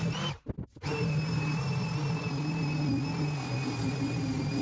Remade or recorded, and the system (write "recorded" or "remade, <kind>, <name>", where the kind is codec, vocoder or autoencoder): recorded